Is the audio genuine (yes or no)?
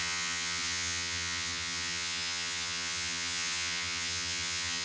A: no